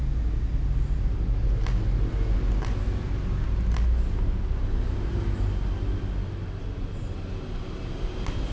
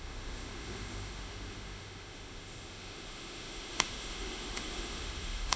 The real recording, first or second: first